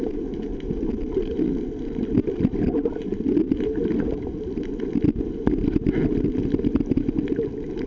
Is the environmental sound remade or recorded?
recorded